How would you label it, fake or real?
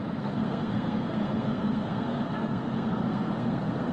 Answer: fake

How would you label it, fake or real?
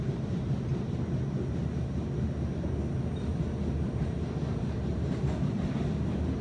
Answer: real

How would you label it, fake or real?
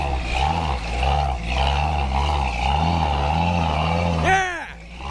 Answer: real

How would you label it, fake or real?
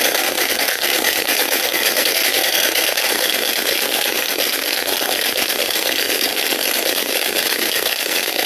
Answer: fake